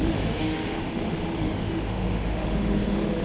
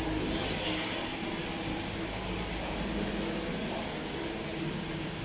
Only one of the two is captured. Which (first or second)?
second